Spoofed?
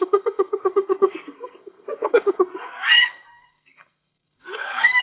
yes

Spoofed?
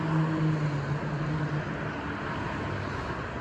no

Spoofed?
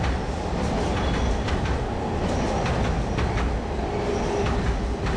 no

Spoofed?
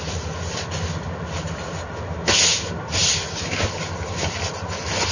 no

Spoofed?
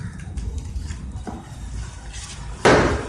no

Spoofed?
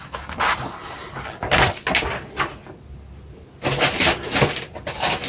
no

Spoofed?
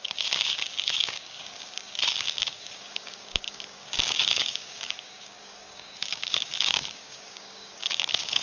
yes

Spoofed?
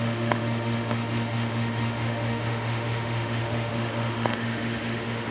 yes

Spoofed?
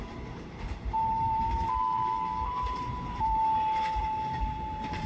yes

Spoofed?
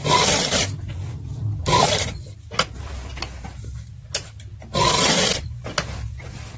yes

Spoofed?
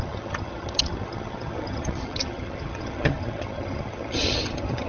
yes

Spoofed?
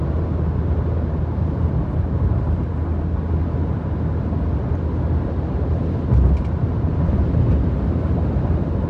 no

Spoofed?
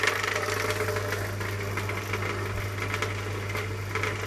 no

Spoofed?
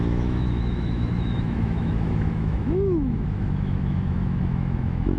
yes